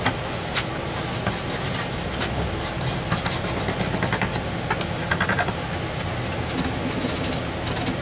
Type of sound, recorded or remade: recorded